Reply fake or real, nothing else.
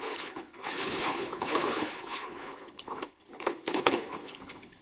fake